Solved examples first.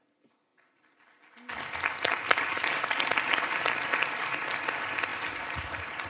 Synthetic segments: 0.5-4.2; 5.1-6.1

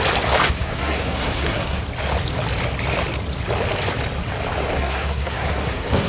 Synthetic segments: 0.4-1.8; 4.7-6.1

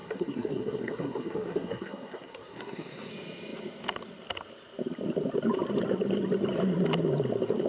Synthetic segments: 0.0-3.1

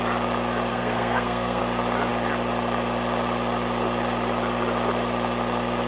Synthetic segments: 0.7-1.6

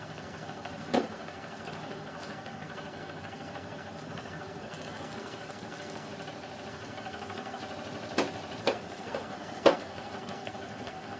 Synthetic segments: 0.0-6.1; 6.7-7.6; 8.6-11.2